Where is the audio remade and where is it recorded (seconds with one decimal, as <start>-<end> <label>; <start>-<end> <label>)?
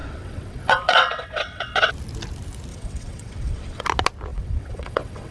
0.0-1.9 remade; 1.9-2.7 recorded; 2.7-3.8 remade; 3.8-4.3 recorded; 4.3-5.3 remade